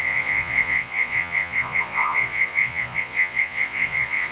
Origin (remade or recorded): remade